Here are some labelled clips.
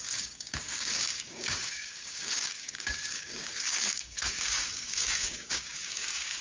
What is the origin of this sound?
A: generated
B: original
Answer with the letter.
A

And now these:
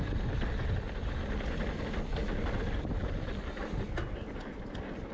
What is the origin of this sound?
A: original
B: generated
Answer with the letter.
A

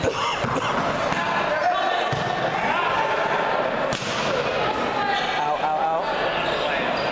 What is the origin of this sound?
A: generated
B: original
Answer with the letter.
B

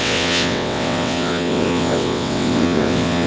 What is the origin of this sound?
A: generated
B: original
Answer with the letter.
A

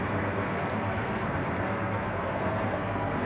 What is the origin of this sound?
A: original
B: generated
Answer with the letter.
B